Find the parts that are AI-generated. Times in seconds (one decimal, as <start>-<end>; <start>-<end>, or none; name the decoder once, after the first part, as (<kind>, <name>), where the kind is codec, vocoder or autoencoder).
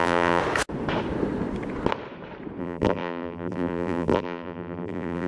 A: 0.0-0.4 (vocoder, BigVGAN v2); 2.6-5.3